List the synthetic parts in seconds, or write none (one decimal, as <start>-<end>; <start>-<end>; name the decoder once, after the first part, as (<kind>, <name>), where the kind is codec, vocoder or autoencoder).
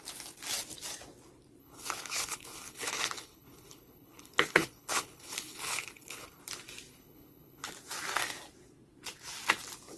1.6-6.4 (codec, HILCodec); 6.9-7.7